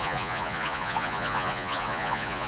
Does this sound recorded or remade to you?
remade